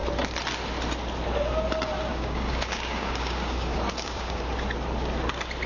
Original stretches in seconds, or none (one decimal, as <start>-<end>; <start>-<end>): 0.0-2.1; 4.4-5.7